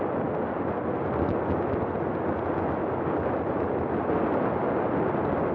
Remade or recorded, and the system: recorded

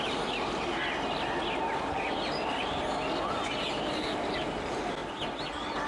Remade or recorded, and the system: recorded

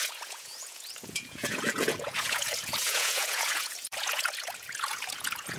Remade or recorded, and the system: remade, vocoder, Vocos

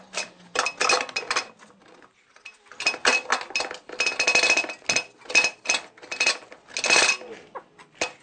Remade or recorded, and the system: recorded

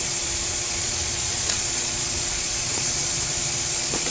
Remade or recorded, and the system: remade, vocoder, Vocos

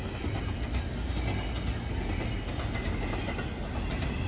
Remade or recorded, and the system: recorded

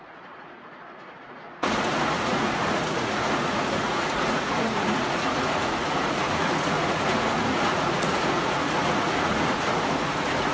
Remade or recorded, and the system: remade, vocoder, Vocos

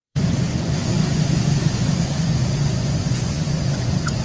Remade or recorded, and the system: remade, vocoder, Vocos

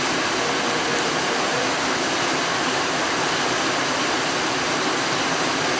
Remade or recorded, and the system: recorded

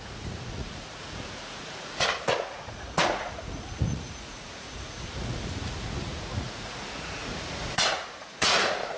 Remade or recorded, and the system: remade, vocoder, Vocos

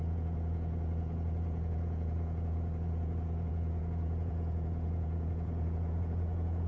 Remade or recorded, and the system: remade, vocoder, Vocos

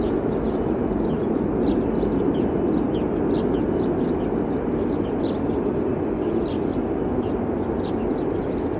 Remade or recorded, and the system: recorded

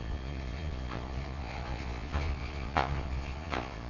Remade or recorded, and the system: remade, vocoder, Vocos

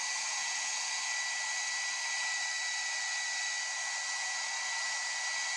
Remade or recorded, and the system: recorded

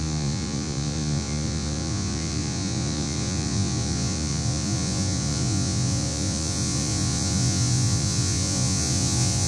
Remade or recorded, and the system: remade, vocoder, Vocos